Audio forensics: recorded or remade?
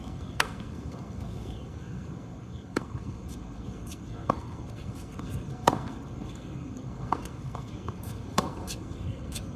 remade